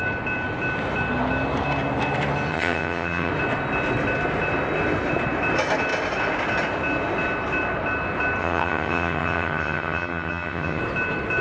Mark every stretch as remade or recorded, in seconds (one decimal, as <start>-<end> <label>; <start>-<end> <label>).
0.0-2.5 recorded; 2.5-3.3 remade; 3.3-8.4 recorded; 8.4-10.8 remade; 10.8-11.4 recorded

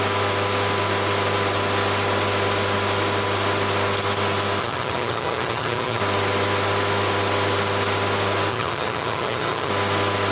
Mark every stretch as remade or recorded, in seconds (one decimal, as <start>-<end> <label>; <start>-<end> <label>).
0.0-4.6 recorded; 4.6-6.0 remade; 6.0-8.5 recorded; 8.5-9.7 remade; 9.7-10.3 recorded